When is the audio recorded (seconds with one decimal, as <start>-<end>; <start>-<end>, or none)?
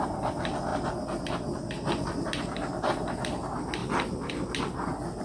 0.0-5.2